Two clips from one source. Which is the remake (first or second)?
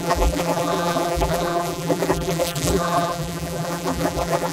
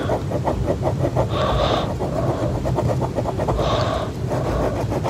first